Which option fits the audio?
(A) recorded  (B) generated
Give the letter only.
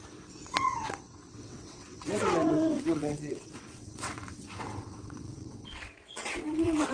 B